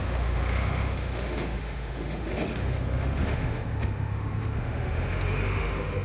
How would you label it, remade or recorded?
remade